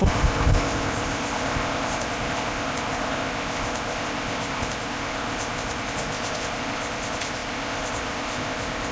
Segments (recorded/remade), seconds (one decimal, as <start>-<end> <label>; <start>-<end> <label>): 0.0-8.9 remade

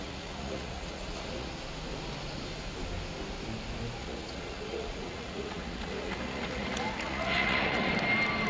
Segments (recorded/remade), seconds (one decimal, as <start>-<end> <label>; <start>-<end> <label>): 0.0-1.5 remade; 1.5-4.0 recorded; 4.0-7.9 remade; 7.9-8.5 recorded

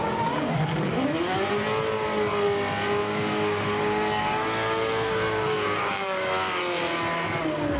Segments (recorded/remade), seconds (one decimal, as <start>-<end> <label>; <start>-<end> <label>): 0.0-3.0 recorded; 3.0-6.6 remade; 6.6-7.8 recorded

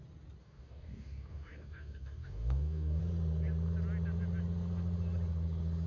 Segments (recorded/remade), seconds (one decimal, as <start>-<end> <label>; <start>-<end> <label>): 0.0-0.4 recorded; 0.4-3.0 remade; 3.0-5.9 recorded

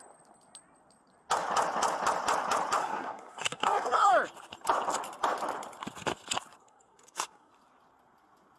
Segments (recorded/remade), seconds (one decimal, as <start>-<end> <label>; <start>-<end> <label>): 0.0-2.8 recorded; 2.8-4.1 remade; 4.1-6.6 recorded; 6.6-7.5 remade; 7.5-8.6 recorded

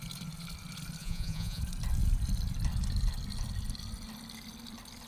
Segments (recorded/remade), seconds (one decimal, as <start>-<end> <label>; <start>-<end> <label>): 0.0-1.0 recorded; 1.0-1.6 remade; 1.6-5.1 recorded

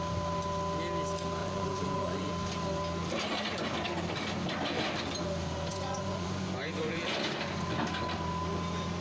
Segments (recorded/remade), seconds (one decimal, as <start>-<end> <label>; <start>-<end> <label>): 0.0-1.4 recorded; 1.4-2.3 remade; 2.3-5.7 recorded; 5.7-7.0 remade; 7.0-9.0 recorded

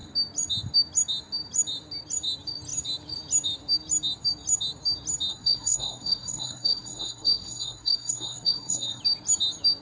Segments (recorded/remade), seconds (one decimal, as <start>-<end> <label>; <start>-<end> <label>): 0.0-5.3 recorded; 5.3-9.0 remade; 9.0-9.8 recorded